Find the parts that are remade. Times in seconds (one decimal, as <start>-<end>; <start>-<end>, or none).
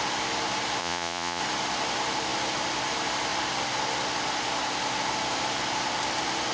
0.8-1.4